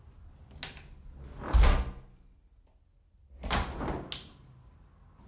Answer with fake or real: real